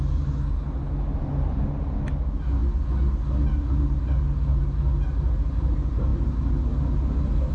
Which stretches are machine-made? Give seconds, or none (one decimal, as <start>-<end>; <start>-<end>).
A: none